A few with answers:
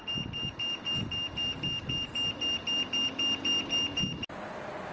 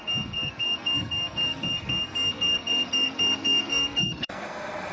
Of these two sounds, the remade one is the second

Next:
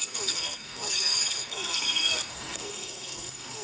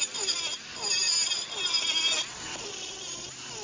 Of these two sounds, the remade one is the first